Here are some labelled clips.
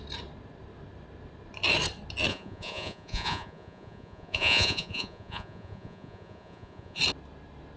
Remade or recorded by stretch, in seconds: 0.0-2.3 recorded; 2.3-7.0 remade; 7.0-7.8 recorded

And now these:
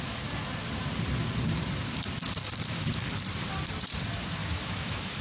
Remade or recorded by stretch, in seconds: 0.0-2.4 recorded; 2.4-3.2 remade; 3.2-4.4 recorded; 4.4-5.2 remade

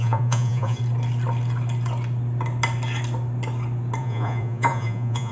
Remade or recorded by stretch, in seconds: 0.0-0.8 remade; 0.8-4.0 recorded; 4.0-5.3 remade

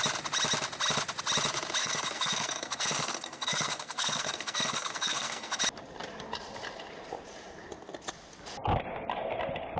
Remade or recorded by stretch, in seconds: 0.0-1.8 recorded; 1.8-5.6 remade; 5.6-9.8 recorded

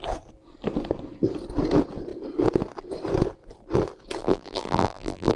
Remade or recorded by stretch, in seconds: 0.0-4.2 recorded; 4.2-5.4 remade